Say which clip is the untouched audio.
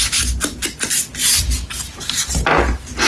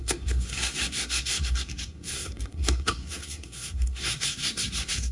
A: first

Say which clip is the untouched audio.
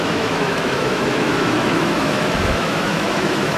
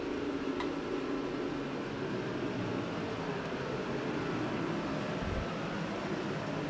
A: second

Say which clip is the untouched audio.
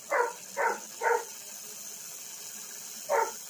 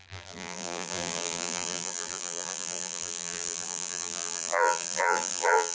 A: first